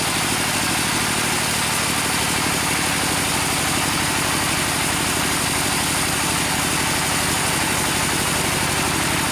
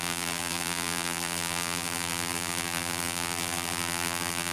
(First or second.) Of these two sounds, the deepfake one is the second